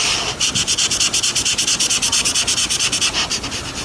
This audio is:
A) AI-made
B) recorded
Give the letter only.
B